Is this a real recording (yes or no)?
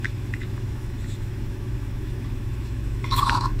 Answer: no